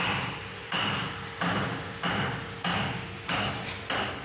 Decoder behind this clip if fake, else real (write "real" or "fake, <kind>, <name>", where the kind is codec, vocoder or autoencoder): real